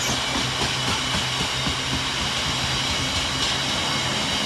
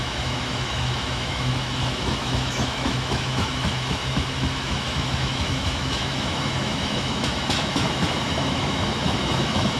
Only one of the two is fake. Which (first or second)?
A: second